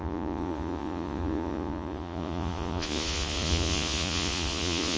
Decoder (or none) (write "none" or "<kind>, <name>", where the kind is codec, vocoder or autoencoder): vocoder, Vocos